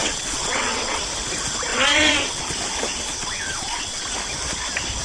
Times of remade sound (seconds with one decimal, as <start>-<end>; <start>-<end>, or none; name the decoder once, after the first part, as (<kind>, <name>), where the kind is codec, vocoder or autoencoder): 0.0-1.0 (vocoder, WaveNeXt); 1.7-2.4; 3.2-4.0